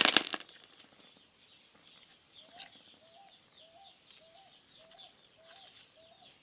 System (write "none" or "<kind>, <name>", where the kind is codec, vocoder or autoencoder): none